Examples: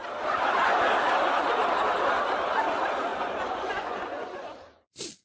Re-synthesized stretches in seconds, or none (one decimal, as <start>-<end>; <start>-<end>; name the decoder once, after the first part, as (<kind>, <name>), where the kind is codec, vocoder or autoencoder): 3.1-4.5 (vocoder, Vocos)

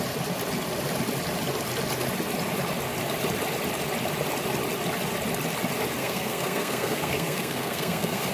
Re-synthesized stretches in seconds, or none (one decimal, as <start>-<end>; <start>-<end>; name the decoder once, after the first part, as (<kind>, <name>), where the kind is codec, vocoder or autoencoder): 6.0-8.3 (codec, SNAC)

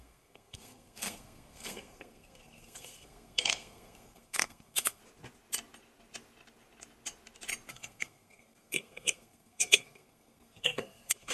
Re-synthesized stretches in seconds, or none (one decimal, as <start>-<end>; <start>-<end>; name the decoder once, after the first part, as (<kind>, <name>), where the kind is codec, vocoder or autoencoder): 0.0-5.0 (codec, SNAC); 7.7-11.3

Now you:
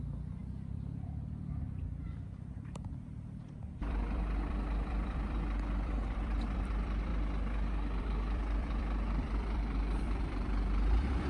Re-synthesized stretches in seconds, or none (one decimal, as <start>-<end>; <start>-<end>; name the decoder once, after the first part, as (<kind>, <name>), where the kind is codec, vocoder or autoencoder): 0.0-7.1 (vocoder, BigVGAN v2); 8.0-11.3